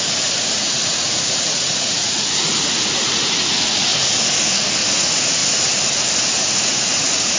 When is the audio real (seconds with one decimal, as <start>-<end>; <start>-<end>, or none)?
3.9-4.9; 5.4-6.3